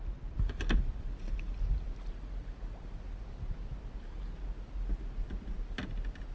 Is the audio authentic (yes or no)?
yes